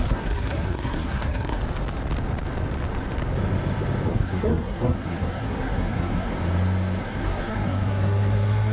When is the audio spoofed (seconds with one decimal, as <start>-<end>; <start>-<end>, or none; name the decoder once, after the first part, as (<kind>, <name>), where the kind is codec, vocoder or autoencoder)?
0.0-1.6 (codec, SNAC); 4.1-6.3; 7.0-8.7